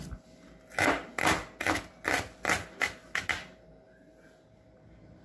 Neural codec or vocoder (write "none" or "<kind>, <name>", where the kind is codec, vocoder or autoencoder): none